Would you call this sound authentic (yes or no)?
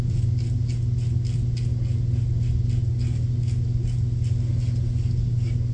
yes